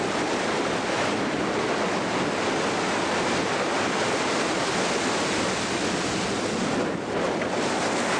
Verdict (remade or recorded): recorded